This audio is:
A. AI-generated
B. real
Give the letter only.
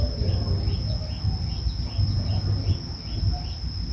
B